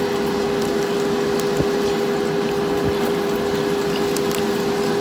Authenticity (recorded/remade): recorded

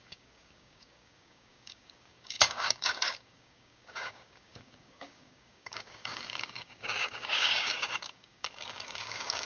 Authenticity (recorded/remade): remade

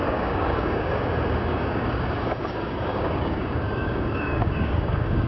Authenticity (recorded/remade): remade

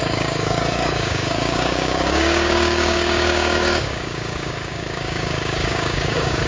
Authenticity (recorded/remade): remade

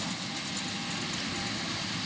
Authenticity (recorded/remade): recorded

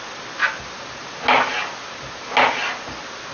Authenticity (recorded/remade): recorded